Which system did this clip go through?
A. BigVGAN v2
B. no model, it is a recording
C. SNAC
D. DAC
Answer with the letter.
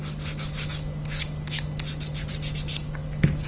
B